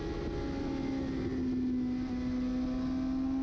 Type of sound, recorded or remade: recorded